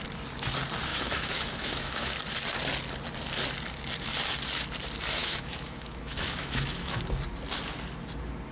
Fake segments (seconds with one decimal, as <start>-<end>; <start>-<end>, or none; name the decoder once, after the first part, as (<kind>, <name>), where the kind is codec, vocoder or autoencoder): 0.9-2.1 (autoencoder, DAC-VAE); 5.2-7.0